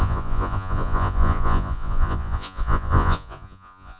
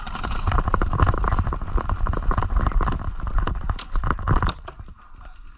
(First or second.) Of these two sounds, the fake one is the first